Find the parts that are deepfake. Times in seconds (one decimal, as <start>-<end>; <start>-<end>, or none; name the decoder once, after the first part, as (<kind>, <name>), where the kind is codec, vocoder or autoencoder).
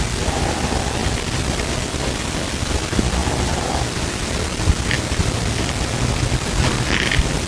1.0-2.3 (vocoder, BigVGAN v2)